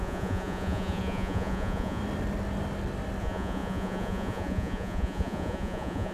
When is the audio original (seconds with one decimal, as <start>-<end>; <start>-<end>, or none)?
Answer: 2.0-3.2